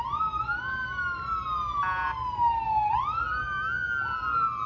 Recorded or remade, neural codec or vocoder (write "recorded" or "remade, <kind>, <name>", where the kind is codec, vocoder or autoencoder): recorded